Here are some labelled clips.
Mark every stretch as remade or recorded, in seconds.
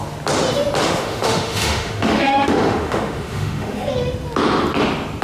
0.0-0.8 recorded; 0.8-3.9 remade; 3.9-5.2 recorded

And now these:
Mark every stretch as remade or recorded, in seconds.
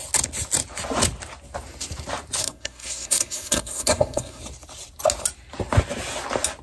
0.0-2.4 recorded; 2.4-4.4 remade; 4.4-6.6 recorded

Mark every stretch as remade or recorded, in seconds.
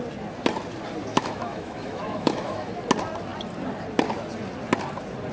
0.0-1.1 recorded; 1.1-2.7 remade; 2.7-5.3 recorded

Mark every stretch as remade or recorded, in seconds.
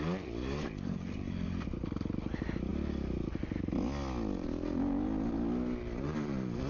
0.0-6.7 recorded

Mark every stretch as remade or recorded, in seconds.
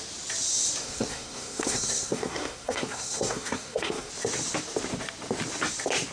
0.0-0.8 recorded; 0.8-4.1 remade; 4.1-6.1 recorded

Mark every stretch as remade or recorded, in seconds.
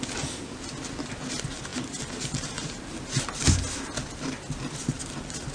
0.0-5.5 recorded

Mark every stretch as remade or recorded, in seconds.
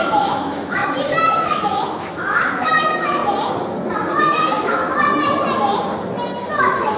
0.0-3.2 remade; 3.2-4.2 recorded; 4.2-4.8 remade; 4.8-6.5 recorded; 6.5-7.0 remade